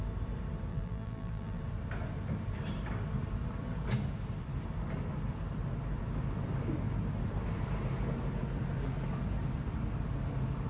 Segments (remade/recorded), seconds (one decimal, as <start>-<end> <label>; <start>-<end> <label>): 0.0-0.7 recorded; 0.7-1.6 remade; 1.6-10.7 recorded